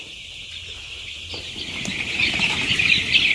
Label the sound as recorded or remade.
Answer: recorded